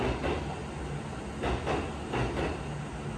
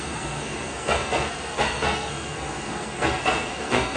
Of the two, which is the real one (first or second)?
first